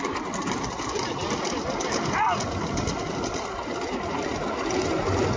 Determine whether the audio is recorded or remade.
recorded